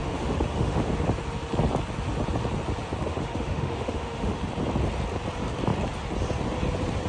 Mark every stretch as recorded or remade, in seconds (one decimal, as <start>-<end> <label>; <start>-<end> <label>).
0.0-0.9 remade; 0.9-3.0 recorded; 3.0-4.4 remade; 4.4-7.1 recorded